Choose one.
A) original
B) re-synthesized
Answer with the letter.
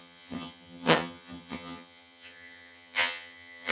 B